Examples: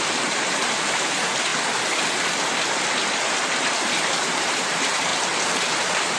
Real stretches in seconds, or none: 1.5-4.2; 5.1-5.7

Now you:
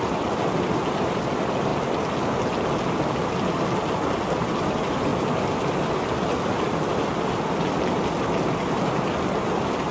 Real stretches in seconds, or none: 0.0-9.9

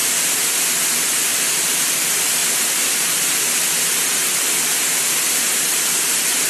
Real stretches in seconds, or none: 0.5-1.3; 2.0-6.5

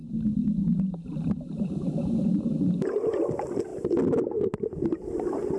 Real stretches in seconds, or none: 0.0-5.6

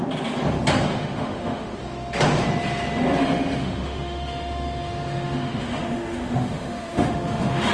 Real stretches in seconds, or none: 0.0-0.9; 1.8-3.2